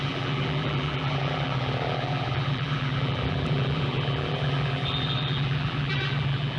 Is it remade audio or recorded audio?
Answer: remade